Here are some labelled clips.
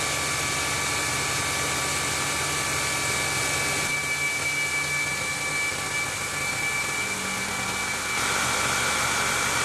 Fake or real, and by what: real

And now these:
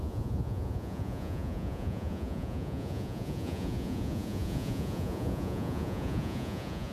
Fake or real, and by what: fake, vocoder, Vocos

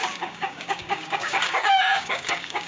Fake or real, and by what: fake, codec, DAC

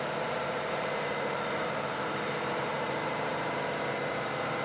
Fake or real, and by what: fake, vocoder, BigVGAN v2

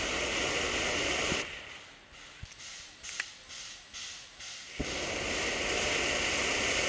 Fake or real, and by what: real